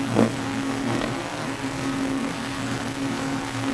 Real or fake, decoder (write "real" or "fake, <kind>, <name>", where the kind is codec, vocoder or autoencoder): fake, codec, SNAC